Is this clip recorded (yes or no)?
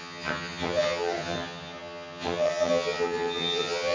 no